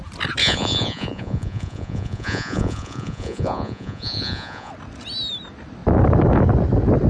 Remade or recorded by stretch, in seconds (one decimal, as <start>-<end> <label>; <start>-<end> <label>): 0.0-0.4 recorded; 0.4-4.7 remade; 4.7-7.1 recorded

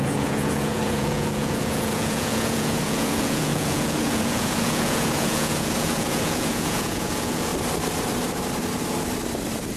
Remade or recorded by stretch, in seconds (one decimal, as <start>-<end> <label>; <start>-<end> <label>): 0.0-7.5 remade; 7.5-9.8 recorded

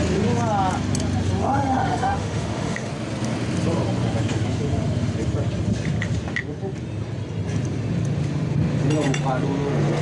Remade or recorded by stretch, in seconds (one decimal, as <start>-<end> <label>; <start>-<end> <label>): 0.0-1.4 recorded; 1.4-2.9 remade; 2.9-10.0 recorded

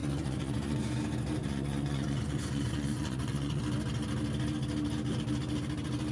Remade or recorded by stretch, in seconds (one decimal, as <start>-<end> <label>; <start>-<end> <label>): 0.0-0.8 remade; 0.8-1.4 recorded; 1.4-3.6 remade; 3.6-6.1 recorded

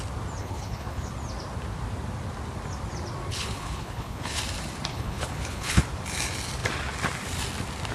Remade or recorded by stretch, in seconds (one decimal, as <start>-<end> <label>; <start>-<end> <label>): 0.0-0.4 recorded; 0.4-1.1 remade; 1.1-3.3 recorded; 3.3-4.4 remade; 4.4-4.9 recorded; 4.9-5.8 remade; 5.8-7.9 recorded

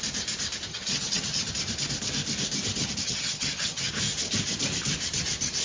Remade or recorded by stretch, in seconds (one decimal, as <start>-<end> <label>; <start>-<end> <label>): 0.0-0.7 recorded; 0.7-1.5 remade; 1.5-3.0 recorded; 3.0-3.9 remade; 3.9-5.6 recorded

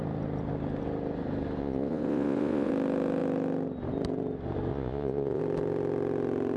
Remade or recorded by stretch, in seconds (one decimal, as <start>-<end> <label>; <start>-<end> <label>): 0.0-1.6 recorded; 1.6-2.7 remade; 2.7-4.7 recorded; 4.7-5.4 remade; 5.4-6.6 recorded

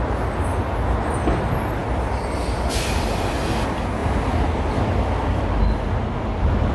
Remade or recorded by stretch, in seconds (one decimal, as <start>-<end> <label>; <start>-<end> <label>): 0.0-6.7 recorded